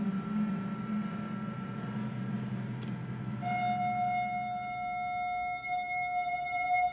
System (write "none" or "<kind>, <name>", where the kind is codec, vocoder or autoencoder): none